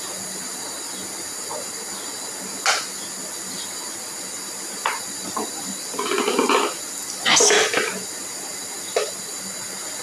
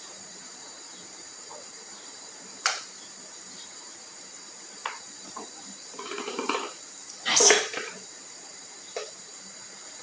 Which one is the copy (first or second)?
second